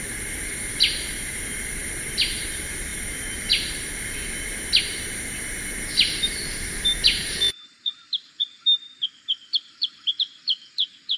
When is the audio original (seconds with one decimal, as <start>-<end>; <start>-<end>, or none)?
0.0-7.0; 8.3-9.5; 10.7-11.2